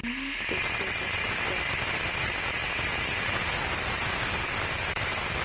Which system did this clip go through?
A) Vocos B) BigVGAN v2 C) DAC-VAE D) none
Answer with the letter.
D